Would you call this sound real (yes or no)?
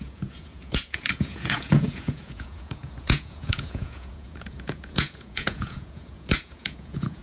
no